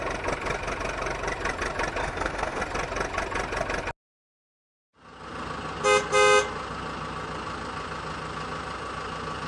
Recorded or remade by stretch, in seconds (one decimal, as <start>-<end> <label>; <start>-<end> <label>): 0.0-2.0 recorded; 2.0-2.6 remade; 2.6-9.5 recorded

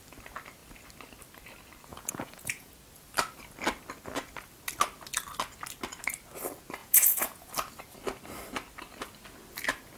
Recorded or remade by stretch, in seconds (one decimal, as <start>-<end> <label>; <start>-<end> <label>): 0.0-1.9 recorded; 1.9-2.7 remade; 2.7-6.8 recorded; 6.8-7.5 remade; 7.5-10.0 recorded

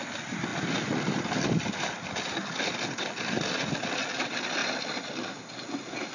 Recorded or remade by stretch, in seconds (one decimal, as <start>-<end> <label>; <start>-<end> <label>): 0.0-6.1 recorded

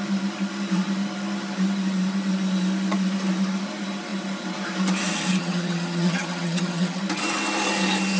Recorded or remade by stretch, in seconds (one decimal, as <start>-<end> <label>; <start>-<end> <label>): 0.0-5.4 recorded; 5.4-7.0 remade; 7.0-8.2 recorded

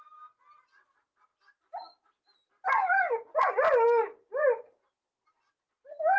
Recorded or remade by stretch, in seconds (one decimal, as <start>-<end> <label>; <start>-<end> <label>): 0.0-6.2 recorded

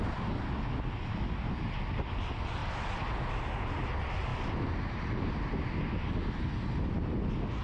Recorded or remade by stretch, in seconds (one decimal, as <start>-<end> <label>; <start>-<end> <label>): 0.0-7.6 recorded